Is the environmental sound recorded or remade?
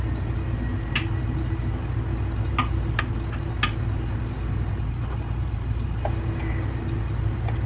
recorded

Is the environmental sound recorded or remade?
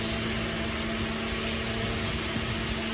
recorded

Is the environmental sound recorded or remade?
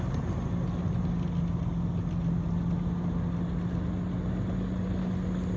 recorded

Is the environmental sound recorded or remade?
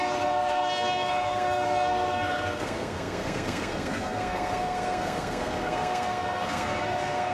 remade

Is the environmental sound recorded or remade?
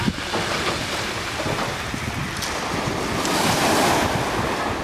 recorded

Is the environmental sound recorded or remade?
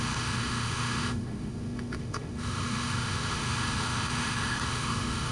remade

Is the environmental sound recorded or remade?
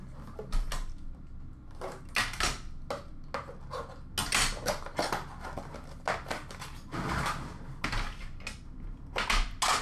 recorded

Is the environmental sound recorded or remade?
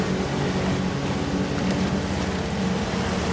recorded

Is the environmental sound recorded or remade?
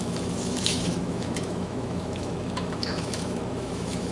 remade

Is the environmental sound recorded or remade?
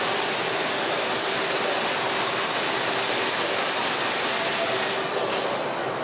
recorded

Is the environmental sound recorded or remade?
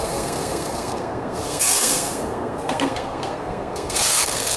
remade